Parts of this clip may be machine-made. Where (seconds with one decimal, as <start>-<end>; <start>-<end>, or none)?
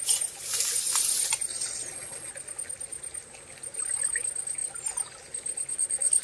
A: 1.5-2.3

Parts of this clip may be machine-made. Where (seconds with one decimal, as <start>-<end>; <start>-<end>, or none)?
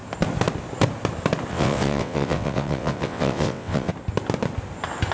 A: 1.5-3.9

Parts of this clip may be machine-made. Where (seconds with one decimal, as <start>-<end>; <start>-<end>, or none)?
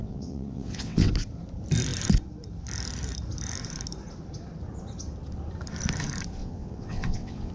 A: 0.0-1.1; 6.4-7.5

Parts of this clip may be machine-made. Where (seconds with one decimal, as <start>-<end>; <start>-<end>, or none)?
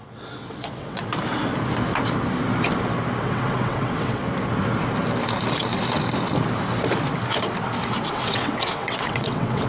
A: 0.0-1.1; 3.2-4.2; 8.1-9.7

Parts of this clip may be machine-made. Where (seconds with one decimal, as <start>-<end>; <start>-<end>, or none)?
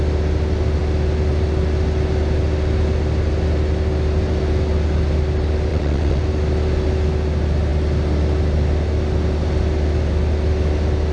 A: 5.7-6.2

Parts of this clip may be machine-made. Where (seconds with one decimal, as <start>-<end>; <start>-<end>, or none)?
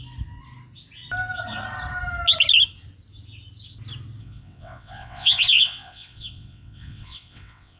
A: 4.2-7.8